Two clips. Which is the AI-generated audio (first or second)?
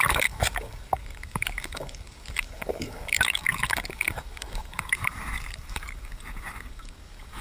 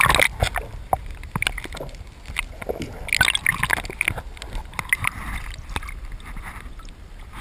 first